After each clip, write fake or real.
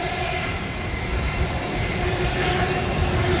fake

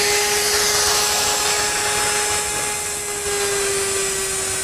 real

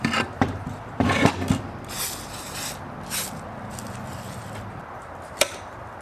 fake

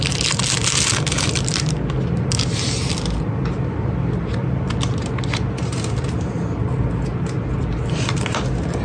real